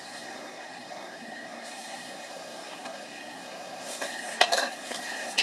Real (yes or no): no